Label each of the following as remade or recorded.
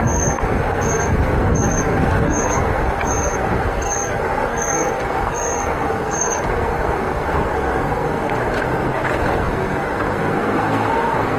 remade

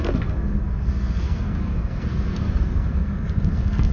remade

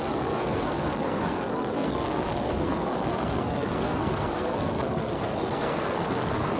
remade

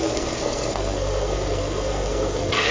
remade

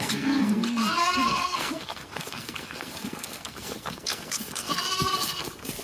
remade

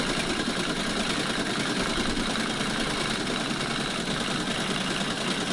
recorded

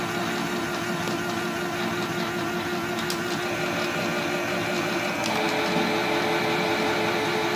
recorded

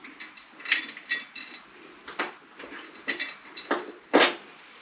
recorded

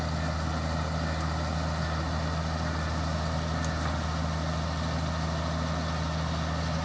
recorded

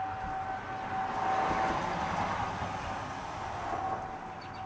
recorded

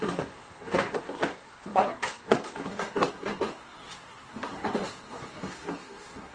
remade